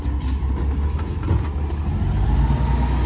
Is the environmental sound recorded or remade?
recorded